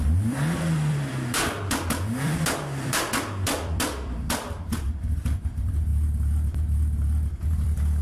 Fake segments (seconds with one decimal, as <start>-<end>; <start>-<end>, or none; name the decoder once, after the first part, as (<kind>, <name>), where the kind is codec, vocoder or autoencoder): 0.0-5.9 (vocoder, BigVGAN v2); 7.4-8.0